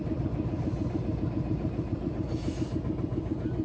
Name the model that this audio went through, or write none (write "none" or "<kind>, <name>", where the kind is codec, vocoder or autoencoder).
none